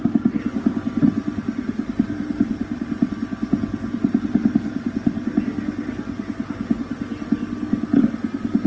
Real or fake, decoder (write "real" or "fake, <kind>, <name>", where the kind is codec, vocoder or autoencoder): real